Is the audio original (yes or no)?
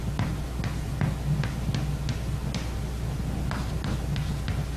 yes